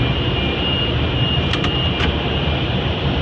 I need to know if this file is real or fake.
real